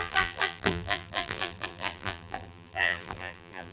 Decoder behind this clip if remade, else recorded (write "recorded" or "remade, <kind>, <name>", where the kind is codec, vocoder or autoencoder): remade, vocoder, BigVGAN v2